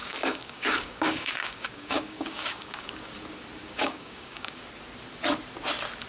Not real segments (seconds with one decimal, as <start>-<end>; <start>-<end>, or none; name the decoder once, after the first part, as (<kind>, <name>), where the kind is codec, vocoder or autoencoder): 0.0-2.9 (codec, DAC); 3.6-4.6